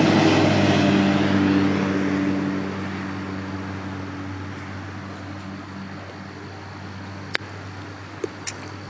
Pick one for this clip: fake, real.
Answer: real